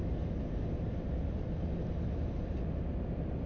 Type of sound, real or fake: real